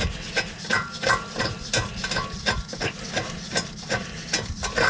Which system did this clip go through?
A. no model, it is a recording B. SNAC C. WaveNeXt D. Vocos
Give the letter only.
A